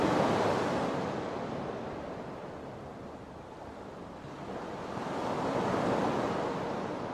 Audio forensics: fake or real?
real